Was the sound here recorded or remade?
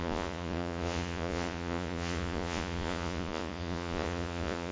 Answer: remade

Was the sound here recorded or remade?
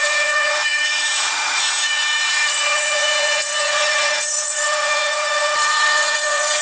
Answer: remade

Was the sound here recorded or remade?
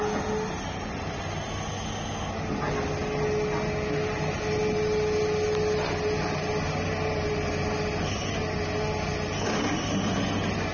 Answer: recorded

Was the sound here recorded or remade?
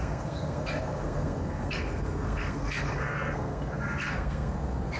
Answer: remade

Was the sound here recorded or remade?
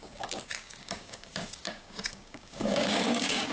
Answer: remade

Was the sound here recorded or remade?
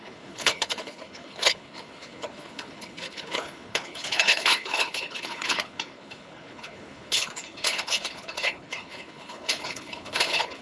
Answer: remade